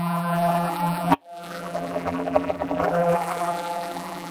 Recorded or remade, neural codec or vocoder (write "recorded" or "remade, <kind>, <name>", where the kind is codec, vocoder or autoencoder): remade, vocoder, BigVGAN v2